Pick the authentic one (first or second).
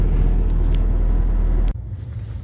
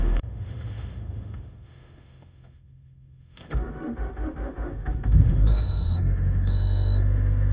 first